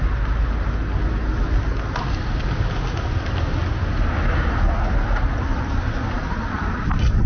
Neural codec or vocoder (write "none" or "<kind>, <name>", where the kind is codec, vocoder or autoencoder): none